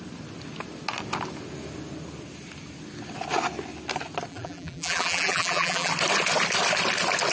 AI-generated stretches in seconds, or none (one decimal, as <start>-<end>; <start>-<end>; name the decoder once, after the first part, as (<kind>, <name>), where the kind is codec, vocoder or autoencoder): 4.3-5.9 (vocoder, BigVGAN v2)